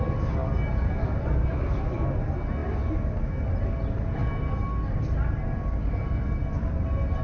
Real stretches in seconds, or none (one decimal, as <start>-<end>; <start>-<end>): 0.0-7.2